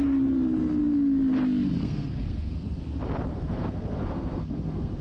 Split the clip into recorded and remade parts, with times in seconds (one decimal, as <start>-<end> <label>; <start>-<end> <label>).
0.0-1.8 recorded; 1.8-2.8 remade; 2.8-3.3 recorded; 3.3-5.0 remade

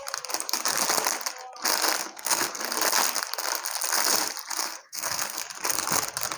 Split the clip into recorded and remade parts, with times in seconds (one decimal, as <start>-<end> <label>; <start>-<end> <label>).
0.0-2.0 recorded; 2.0-2.6 remade; 2.6-4.6 recorded; 4.6-5.4 remade; 5.4-6.4 recorded

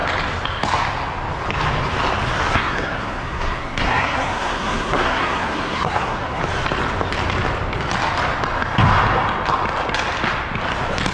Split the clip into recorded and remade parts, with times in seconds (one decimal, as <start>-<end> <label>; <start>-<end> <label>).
0.0-2.5 recorded; 2.5-6.4 remade; 6.4-11.1 recorded